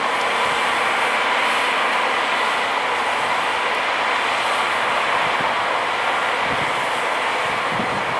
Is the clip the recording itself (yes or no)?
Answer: yes